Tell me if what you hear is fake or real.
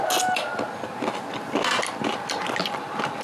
real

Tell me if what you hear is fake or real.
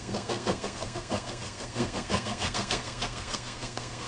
fake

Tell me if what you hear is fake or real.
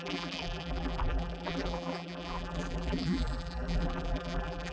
fake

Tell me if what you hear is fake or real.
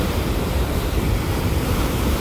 fake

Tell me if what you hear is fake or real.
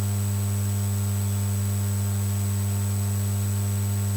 real